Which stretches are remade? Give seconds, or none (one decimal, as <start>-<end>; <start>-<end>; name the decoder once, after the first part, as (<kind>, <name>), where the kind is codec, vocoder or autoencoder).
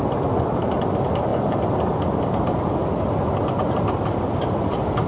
none